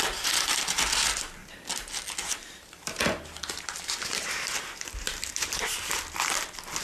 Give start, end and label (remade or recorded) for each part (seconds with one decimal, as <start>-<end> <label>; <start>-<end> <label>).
0.0-1.4 recorded; 1.4-1.9 remade; 1.9-2.4 recorded; 2.4-5.8 remade; 5.8-6.8 recorded